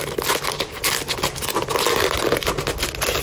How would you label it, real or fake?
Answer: real